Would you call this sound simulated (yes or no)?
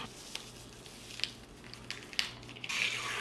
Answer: no